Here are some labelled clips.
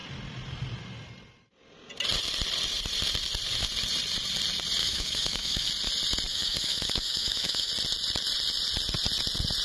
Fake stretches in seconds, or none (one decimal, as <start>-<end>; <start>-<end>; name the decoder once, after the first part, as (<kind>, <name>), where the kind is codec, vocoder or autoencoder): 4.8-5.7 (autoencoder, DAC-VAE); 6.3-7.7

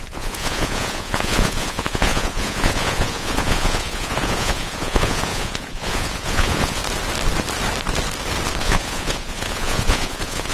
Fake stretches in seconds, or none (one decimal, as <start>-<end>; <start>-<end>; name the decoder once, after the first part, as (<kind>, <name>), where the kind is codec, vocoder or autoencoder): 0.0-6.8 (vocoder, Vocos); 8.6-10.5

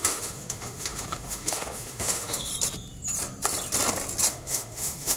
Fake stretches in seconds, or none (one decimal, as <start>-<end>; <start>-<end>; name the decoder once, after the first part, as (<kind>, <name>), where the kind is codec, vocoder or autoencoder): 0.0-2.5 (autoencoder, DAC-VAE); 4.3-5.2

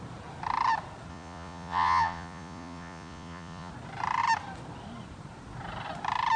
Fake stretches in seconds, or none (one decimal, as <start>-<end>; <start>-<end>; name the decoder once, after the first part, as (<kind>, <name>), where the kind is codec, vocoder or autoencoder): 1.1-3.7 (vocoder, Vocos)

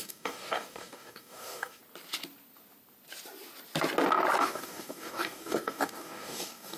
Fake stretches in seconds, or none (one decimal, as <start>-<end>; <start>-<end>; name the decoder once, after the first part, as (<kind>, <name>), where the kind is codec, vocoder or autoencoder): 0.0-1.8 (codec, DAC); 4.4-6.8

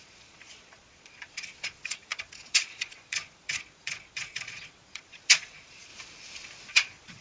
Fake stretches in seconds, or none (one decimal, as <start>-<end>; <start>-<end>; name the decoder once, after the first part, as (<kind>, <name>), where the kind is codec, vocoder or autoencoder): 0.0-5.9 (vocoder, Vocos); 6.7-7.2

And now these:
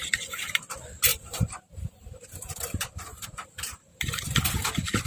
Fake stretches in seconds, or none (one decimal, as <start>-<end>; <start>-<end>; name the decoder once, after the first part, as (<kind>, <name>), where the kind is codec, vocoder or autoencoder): 1.1-4.2 (vocoder, BigVGAN v2)

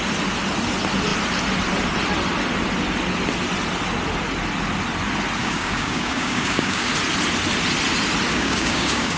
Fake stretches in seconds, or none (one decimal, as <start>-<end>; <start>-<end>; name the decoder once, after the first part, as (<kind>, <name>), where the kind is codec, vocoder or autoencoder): 5.4-6.9 (codec, DAC); 8.3-9.2